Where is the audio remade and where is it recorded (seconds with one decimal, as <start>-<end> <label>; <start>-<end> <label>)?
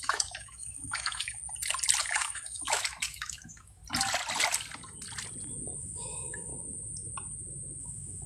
0.0-1.4 remade; 1.4-2.0 recorded; 2.0-3.8 remade; 3.8-5.8 recorded; 5.8-6.5 remade; 6.5-7.8 recorded; 7.8-8.3 remade